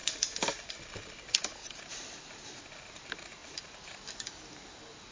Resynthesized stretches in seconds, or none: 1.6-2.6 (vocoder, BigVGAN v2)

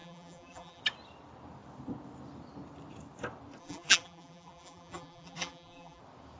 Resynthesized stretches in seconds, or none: 0.0-0.8 (vocoder, BigVGAN v2); 3.6-6.0